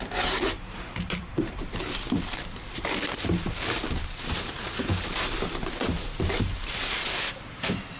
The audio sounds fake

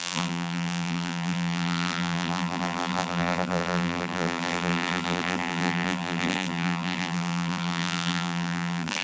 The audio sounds fake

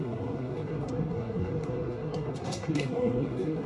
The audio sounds fake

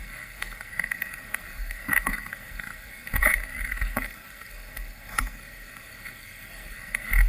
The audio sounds fake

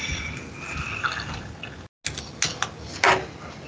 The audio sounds real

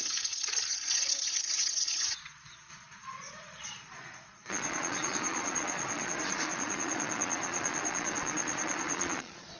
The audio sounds fake